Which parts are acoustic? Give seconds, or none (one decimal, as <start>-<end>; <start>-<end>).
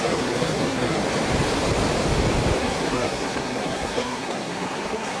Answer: 1.0-2.6